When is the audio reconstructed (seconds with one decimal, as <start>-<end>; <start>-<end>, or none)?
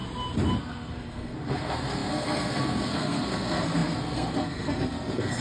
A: 0.6-5.4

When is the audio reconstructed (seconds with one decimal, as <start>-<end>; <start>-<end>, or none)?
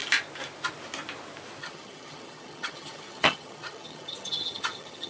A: 1.6-5.1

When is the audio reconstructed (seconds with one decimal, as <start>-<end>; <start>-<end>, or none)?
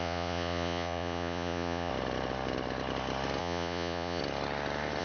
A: 0.0-1.9; 3.4-4.2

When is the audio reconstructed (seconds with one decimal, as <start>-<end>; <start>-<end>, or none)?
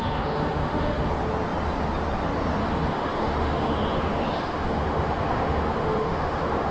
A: 0.0-1.1; 2.6-6.7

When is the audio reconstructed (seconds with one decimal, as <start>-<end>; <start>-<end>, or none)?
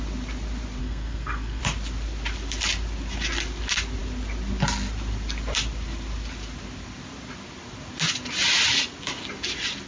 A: 0.8-1.6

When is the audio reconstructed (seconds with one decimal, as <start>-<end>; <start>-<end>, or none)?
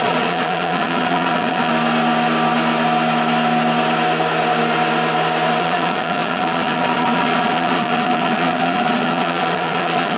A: 0.0-1.7; 5.6-10.2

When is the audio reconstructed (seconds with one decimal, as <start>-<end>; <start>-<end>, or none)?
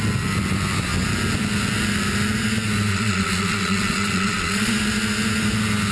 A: 2.9-4.7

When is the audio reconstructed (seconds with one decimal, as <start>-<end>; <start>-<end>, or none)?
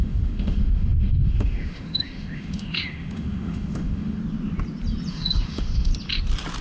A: 0.0-4.2; 5.1-5.9